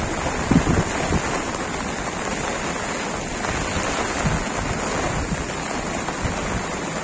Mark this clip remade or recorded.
recorded